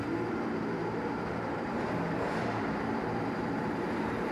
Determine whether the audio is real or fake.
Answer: fake